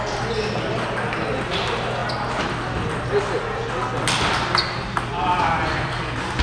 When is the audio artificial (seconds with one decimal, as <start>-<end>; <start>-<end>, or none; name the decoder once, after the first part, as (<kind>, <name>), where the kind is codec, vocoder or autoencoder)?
none